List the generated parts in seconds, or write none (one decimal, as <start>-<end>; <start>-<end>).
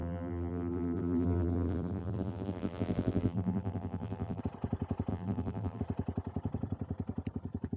0.0-4.4; 5.1-5.8